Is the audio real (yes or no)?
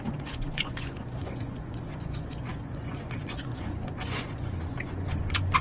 no